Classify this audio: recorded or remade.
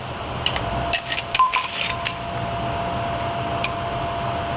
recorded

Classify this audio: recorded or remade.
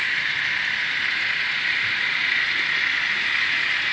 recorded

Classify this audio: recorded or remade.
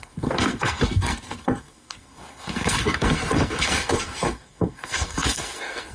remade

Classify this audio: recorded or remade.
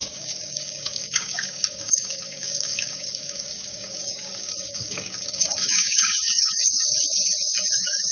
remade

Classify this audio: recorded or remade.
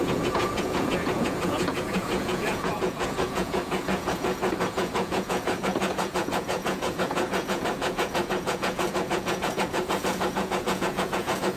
remade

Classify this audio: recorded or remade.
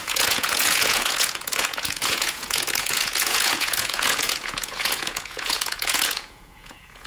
remade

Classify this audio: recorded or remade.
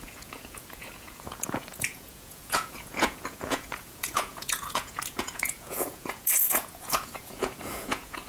remade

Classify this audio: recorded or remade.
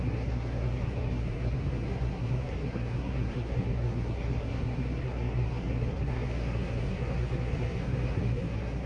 remade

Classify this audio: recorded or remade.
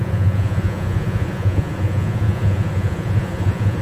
remade